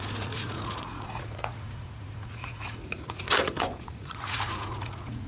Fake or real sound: fake